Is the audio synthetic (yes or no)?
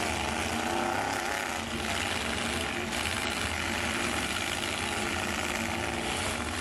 no